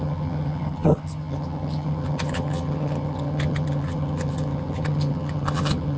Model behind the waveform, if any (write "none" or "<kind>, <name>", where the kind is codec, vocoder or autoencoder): vocoder, HiFi-GAN